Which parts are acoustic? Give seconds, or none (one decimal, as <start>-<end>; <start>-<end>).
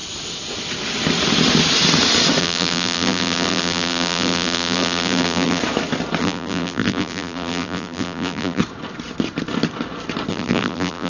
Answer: 0.0-2.4; 5.6-6.2; 8.6-10.3